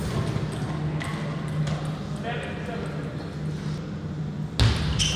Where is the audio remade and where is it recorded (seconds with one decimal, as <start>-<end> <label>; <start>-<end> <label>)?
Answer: 0.0-5.2 recorded